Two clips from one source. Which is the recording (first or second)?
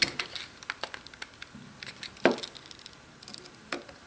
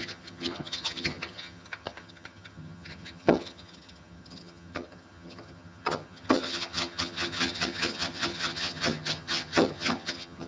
first